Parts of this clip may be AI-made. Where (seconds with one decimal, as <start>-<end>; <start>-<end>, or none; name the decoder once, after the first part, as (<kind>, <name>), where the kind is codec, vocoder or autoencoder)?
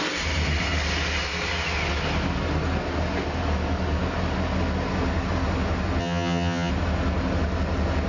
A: 6.0-6.7 (vocoder, HiFi-GAN)